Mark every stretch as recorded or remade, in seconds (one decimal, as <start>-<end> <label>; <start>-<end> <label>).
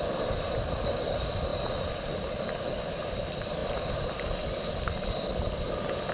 0.0-6.1 recorded